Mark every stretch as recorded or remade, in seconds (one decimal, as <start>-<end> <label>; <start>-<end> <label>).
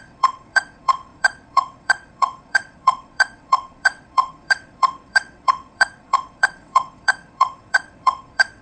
0.0-8.6 remade